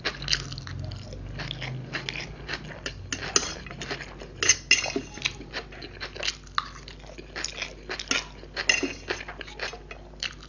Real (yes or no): yes